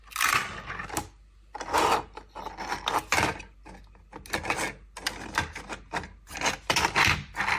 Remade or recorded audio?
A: recorded